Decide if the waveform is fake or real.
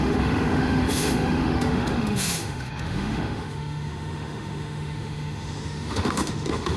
fake